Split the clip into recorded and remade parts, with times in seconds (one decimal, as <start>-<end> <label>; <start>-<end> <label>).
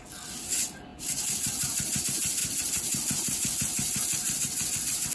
0.0-5.1 recorded